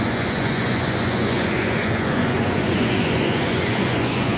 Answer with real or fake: fake